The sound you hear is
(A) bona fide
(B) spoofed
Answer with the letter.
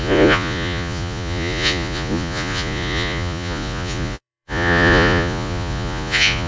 B